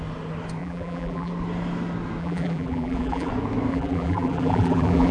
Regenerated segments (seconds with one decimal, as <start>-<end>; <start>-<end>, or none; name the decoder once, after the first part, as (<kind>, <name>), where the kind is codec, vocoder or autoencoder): 0.6-1.3 (vocoder, BigVGAN v2); 2.2-3.3; 3.7-5.1